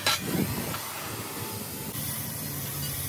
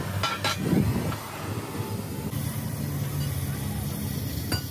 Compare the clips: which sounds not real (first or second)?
first